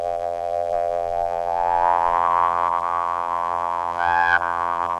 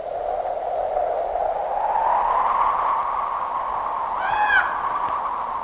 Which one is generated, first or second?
first